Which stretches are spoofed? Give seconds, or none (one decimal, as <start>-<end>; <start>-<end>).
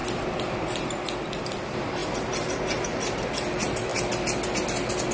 1.5-3.9